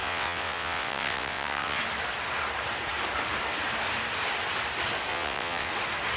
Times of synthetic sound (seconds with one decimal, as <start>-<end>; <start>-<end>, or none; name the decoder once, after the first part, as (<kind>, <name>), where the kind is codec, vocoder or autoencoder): 0.0-1.8 (vocoder, WaveNeXt); 5.1-5.7